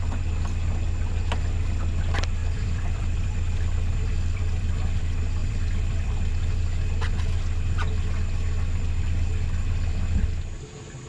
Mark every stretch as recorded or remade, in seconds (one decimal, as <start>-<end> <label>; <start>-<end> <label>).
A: 0.0-2.4 recorded; 2.4-5.0 remade; 5.0-5.4 recorded; 5.4-6.3 remade; 6.3-11.1 recorded

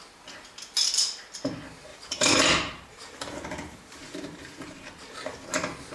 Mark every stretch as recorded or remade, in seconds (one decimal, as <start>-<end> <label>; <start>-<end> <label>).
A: 0.0-1.9 recorded; 1.9-5.4 remade; 5.4-5.9 recorded

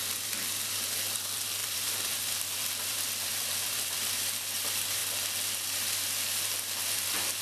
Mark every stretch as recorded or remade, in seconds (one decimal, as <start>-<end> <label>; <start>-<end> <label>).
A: 0.0-5.0 remade; 5.0-7.4 recorded